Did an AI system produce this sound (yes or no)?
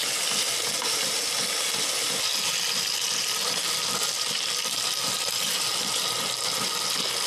no